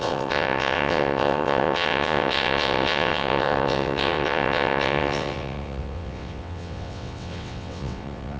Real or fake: fake